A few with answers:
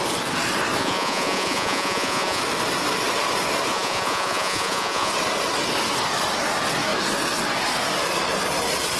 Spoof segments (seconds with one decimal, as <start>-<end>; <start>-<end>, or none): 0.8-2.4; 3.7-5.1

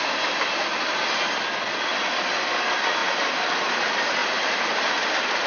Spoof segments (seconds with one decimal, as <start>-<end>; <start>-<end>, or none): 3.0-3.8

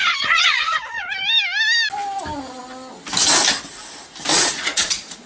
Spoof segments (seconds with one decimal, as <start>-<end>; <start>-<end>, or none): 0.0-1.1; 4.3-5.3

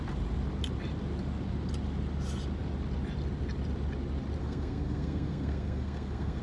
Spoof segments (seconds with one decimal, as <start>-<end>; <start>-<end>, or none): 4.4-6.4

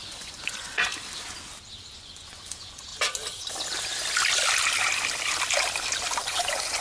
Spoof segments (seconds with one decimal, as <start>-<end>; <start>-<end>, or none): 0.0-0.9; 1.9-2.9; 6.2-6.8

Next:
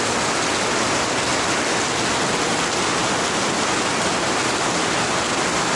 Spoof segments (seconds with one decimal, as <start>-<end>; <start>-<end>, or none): 3.0-3.6